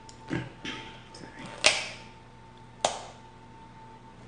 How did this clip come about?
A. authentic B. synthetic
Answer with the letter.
A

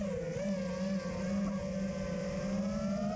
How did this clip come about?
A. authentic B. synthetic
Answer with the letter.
A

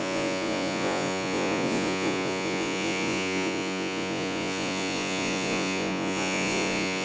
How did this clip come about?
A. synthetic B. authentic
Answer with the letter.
A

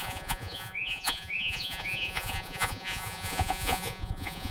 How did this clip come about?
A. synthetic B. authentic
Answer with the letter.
A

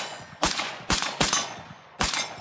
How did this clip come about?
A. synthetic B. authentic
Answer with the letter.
A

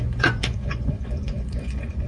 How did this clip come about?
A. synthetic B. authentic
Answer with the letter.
A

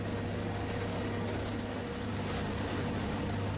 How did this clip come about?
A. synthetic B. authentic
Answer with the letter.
B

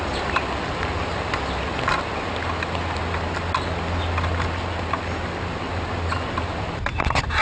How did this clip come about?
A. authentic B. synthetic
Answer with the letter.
A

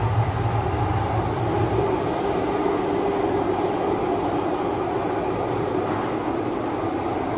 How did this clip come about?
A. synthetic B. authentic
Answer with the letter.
B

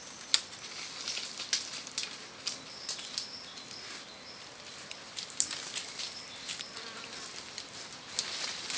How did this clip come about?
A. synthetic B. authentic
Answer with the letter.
B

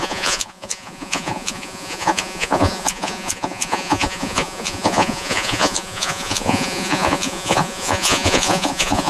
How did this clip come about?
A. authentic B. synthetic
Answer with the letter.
B